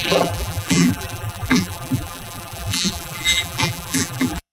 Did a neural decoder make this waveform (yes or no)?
yes